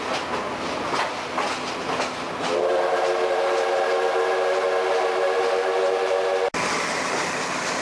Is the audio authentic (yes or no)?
yes